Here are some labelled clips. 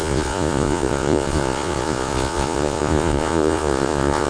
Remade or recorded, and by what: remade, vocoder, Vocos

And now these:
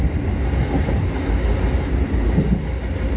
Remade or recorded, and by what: recorded